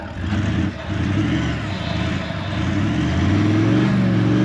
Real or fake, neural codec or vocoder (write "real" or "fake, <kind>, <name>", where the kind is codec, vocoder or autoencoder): real